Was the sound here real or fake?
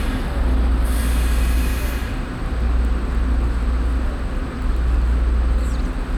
real